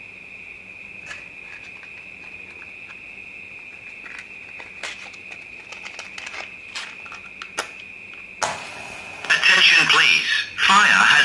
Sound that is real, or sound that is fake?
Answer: real